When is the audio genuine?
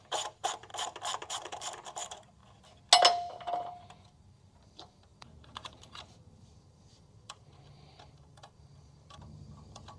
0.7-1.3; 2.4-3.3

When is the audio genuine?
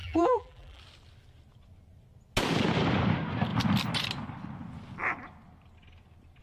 0.8-6.4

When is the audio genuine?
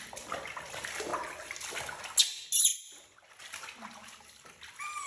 0.0-5.1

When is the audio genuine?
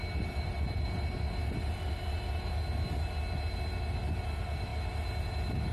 0.0-5.7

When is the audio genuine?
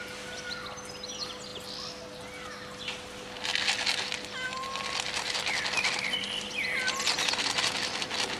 0.0-8.4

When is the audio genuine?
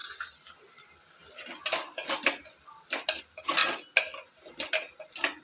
3.6-4.9